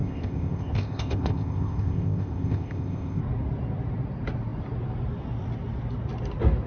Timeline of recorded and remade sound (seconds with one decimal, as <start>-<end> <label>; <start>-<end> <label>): 0.0-3.2 remade; 3.2-6.7 recorded